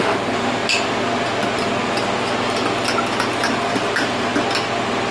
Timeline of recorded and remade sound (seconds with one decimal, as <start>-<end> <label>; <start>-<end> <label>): 0.0-0.6 remade; 0.6-3.7 recorded; 3.7-4.3 remade; 4.3-5.1 recorded